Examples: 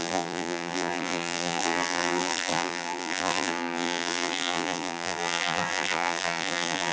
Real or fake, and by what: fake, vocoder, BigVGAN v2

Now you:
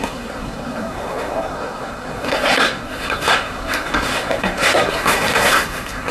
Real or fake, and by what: fake, codec, SNAC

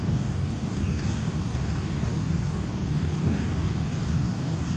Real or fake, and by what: fake, codec, DAC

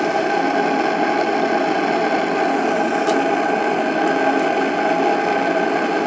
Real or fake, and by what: real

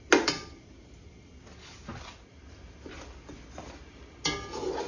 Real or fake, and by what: real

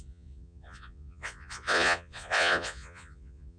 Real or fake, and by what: fake, vocoder, Vocos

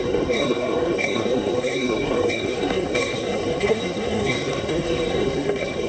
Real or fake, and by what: fake, codec, SNAC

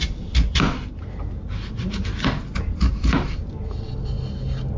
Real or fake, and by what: real